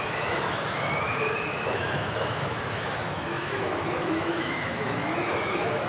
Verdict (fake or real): fake